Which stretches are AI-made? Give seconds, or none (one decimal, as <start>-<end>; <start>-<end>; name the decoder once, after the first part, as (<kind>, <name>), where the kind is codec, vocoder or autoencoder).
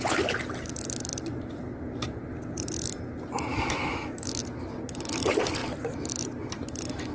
3.5-4.4 (autoencoder, DAC-VAE)